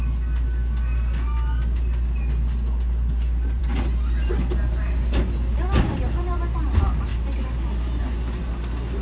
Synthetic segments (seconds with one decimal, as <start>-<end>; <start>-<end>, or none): none